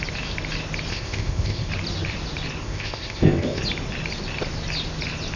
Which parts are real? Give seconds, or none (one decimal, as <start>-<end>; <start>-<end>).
0.0-0.9; 1.7-2.6; 3.6-5.4

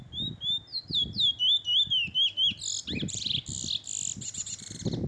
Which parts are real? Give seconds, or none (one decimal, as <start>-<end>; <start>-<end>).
0.0-0.7; 1.4-5.1

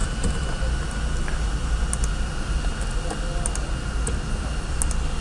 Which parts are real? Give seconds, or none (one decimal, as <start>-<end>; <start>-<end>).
0.0-5.2

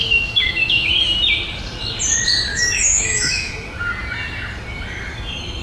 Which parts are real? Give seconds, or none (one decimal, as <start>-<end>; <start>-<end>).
0.9-2.5; 3.5-5.6

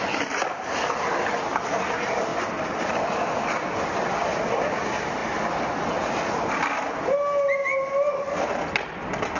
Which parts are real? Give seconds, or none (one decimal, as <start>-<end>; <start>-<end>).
0.0-9.4

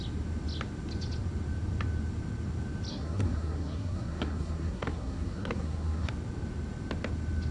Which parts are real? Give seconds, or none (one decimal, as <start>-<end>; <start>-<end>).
0.0-2.9; 6.1-7.5

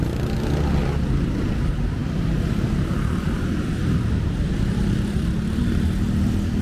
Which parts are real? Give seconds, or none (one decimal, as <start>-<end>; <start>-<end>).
0.0-6.6

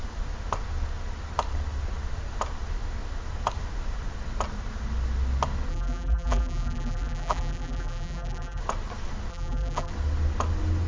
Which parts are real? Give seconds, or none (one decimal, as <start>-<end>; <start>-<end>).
0.0-5.7; 8.6-9.3; 9.9-10.9